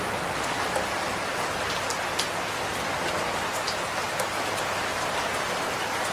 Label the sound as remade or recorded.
recorded